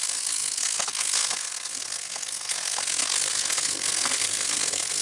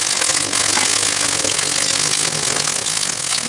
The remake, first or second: first